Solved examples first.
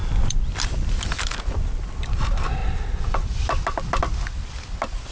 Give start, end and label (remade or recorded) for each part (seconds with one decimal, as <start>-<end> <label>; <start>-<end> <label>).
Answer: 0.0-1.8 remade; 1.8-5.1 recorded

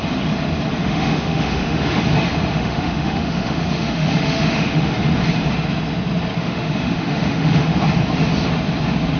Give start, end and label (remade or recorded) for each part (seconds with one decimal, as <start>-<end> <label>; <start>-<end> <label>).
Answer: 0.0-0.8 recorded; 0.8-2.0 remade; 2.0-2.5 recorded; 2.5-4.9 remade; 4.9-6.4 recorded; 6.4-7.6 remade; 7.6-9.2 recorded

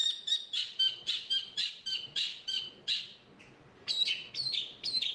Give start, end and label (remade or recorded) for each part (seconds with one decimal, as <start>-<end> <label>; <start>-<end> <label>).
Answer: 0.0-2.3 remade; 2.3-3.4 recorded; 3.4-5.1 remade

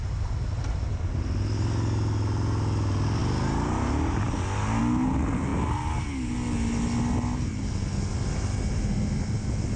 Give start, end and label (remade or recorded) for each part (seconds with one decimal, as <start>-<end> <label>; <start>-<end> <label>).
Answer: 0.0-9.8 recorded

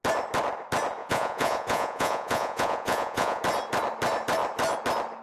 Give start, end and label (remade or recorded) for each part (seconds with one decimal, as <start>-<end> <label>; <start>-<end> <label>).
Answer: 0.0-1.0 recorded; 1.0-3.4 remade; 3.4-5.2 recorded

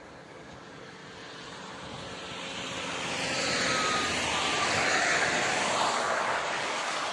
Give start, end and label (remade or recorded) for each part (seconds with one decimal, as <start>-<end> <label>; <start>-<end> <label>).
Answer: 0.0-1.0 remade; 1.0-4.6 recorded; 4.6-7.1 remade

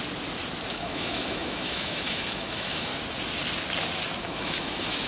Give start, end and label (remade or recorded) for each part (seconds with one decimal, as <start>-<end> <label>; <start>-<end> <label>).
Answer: 0.0-0.7 recorded; 0.7-2.9 remade; 2.9-4.2 recorded; 4.2-5.1 remade

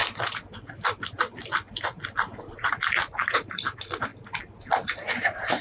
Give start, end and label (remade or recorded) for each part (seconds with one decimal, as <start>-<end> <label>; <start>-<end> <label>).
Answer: 0.0-3.1 recorded; 3.1-3.6 remade; 3.6-5.6 recorded